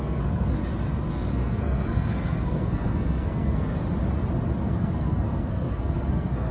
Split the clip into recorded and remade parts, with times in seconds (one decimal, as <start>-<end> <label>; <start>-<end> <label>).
0.0-0.6 remade; 0.6-1.1 recorded; 1.1-3.8 remade; 3.8-4.6 recorded; 4.6-6.5 remade